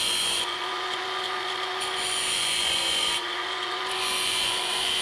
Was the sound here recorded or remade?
remade